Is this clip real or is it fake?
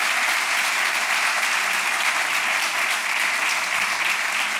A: real